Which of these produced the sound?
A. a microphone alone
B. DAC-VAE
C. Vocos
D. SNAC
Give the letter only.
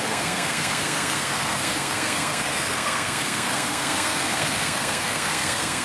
D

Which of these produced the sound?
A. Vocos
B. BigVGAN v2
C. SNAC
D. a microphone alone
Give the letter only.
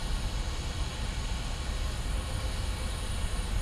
D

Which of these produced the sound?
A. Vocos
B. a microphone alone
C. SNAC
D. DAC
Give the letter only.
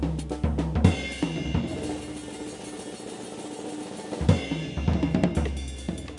B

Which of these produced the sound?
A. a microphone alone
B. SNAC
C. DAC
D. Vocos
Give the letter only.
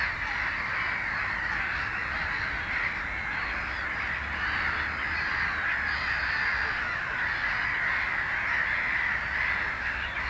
A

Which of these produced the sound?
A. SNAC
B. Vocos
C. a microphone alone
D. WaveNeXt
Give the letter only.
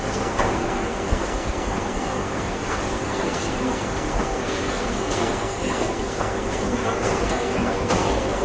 A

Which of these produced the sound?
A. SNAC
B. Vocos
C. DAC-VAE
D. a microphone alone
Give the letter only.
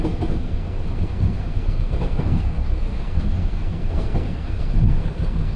A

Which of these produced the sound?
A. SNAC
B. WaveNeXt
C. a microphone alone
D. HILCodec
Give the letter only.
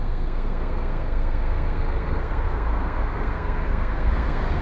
A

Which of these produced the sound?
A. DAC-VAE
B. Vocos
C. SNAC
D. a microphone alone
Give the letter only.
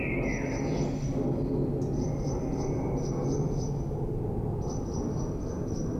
D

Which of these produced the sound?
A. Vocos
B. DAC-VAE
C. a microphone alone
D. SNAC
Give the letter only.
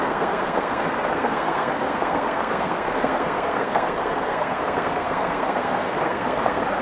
D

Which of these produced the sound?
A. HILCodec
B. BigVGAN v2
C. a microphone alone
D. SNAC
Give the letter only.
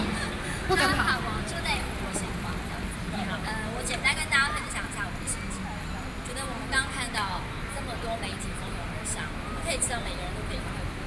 C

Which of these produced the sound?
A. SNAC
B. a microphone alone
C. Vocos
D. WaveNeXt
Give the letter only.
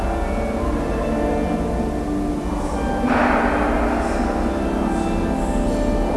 B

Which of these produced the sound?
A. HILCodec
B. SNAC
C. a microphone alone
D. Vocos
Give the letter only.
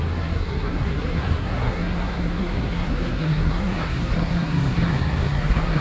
B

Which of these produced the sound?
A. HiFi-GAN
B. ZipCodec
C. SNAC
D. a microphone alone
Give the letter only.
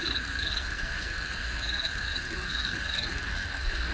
C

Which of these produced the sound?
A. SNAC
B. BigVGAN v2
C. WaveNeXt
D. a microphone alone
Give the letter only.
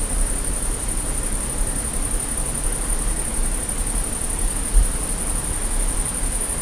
D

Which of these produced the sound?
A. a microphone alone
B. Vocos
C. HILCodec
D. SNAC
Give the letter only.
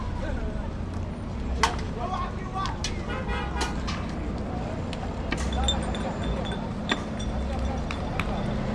A